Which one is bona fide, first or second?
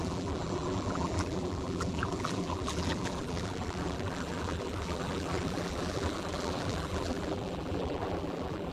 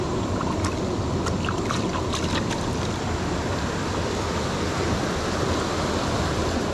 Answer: second